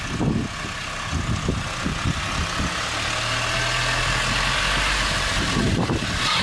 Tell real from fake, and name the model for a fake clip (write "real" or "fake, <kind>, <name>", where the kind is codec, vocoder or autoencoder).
real